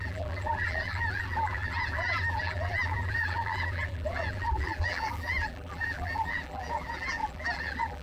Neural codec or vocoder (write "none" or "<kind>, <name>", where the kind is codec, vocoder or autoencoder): vocoder, BigVGAN v2